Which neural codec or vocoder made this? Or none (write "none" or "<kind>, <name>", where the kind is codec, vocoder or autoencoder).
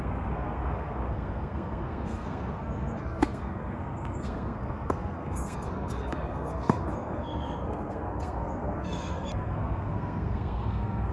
codec, SNAC